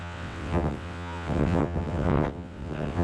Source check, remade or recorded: remade